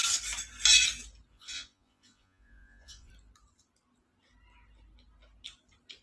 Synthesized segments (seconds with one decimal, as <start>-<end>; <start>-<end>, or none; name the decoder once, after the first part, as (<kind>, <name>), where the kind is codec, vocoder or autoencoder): 1.3-3.1 (vocoder, Vocos)